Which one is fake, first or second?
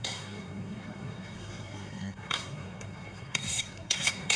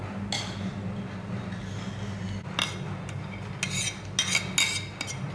first